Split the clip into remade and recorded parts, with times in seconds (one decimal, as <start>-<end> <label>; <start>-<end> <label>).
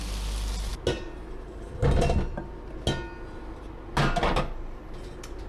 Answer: 0.0-5.5 recorded